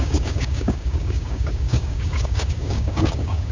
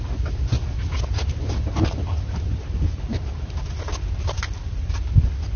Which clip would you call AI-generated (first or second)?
first